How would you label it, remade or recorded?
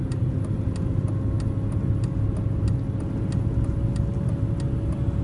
recorded